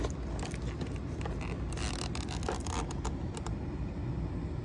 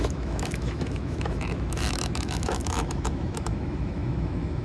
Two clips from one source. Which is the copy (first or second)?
second